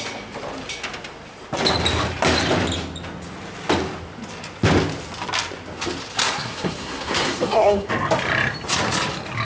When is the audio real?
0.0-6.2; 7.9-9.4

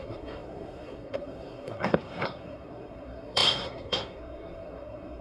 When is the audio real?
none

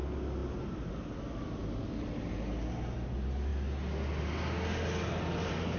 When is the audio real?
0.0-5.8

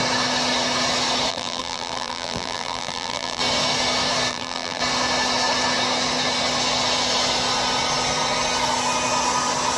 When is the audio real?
0.0-1.3; 3.4-4.3; 4.8-9.8

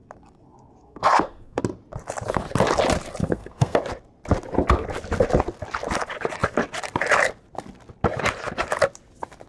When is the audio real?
0.0-0.8; 1.6-3.2; 3.8-9.5

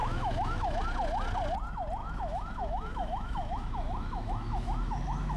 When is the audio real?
0.8-2.0

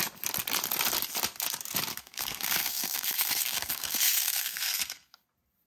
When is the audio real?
0.0-1.9; 5.3-5.7

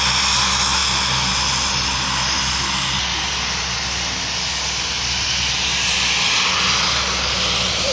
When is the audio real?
0.0-7.9